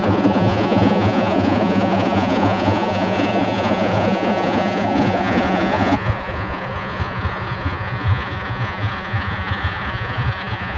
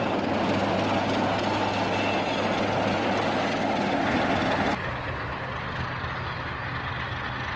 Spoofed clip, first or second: first